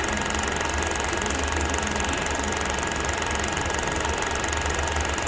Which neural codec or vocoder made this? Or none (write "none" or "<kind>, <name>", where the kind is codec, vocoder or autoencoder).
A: none